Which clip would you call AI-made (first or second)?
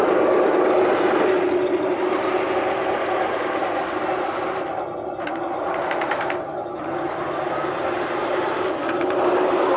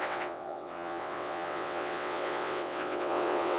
second